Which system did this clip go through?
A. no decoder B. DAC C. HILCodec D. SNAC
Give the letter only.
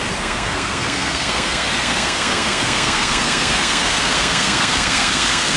D